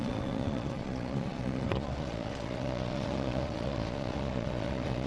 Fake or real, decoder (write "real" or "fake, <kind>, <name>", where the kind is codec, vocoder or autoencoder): fake, vocoder, Vocos